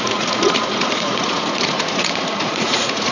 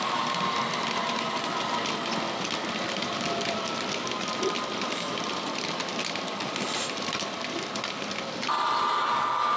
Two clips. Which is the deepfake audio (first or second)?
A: first